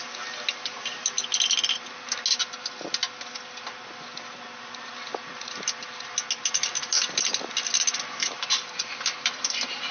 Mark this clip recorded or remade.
recorded